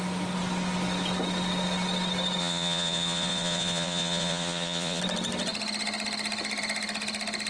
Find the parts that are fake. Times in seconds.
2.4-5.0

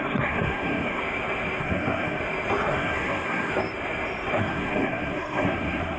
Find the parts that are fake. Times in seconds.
0.0-1.0; 1.6-2.2; 2.7-3.5; 4.4-6.0

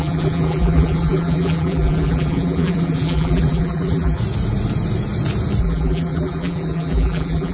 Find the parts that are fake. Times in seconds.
0.0-4.2; 5.6-7.5

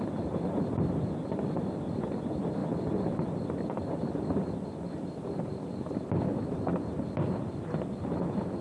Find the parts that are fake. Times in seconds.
0.0-2.6; 3.2-8.6

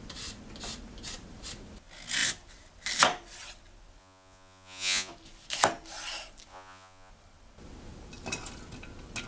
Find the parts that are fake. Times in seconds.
4.0-5.1; 6.5-7.1

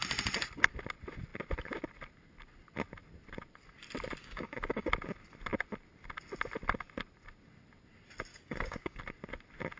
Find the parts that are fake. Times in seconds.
4.2-4.9; 8.3-9.0

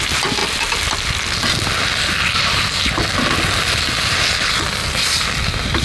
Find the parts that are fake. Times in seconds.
none